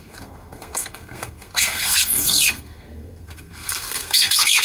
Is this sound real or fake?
fake